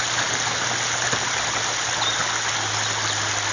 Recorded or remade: recorded